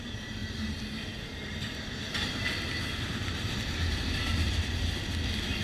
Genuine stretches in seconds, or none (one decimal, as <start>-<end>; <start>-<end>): 0.0-5.6